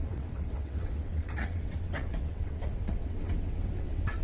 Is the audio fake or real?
fake